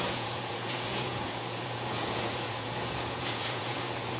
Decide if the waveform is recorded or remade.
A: remade